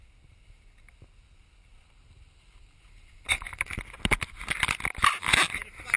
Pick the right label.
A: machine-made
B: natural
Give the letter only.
B